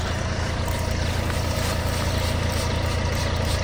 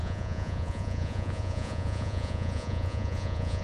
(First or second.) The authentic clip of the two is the first